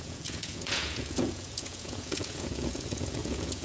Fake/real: fake